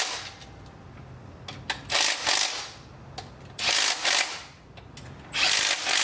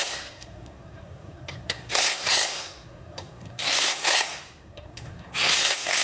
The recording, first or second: first